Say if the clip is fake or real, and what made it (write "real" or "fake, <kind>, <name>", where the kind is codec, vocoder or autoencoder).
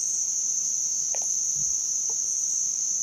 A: fake, vocoder, BigVGAN v2